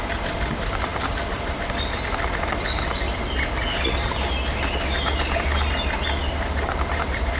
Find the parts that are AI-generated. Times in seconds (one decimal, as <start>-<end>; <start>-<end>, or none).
none